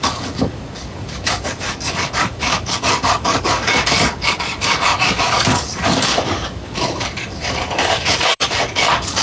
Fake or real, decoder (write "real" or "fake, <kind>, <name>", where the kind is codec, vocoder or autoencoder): fake, codec, DAC